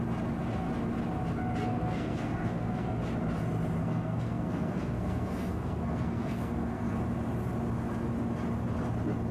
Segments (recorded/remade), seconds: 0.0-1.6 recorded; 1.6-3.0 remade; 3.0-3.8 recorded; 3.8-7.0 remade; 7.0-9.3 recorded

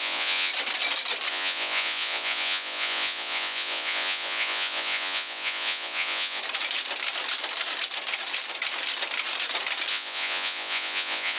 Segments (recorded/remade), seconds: 0.0-0.5 remade; 0.5-1.3 recorded; 1.3-6.4 remade; 6.4-9.9 recorded; 9.9-11.4 remade

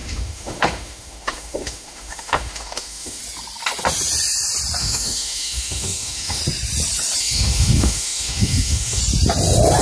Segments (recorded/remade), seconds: 0.0-3.2 remade; 3.2-4.8 recorded; 4.8-6.4 remade; 6.4-7.2 recorded; 7.2-9.0 remade; 9.0-9.8 recorded

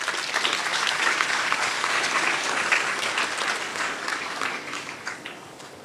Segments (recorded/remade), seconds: 0.0-0.7 recorded; 0.7-3.1 remade; 3.1-3.7 recorded; 3.7-5.8 remade

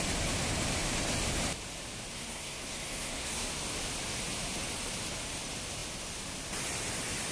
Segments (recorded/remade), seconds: 0.0-2.1 recorded; 2.1-3.5 remade; 3.5-7.3 recorded

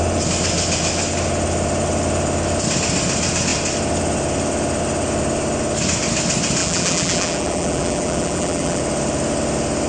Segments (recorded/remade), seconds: 0.0-6.6 recorded; 6.6-8.8 remade; 8.8-9.9 recorded

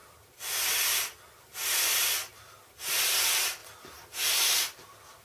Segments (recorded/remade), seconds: 0.0-5.2 recorded